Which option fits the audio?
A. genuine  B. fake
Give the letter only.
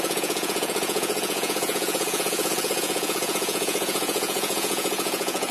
B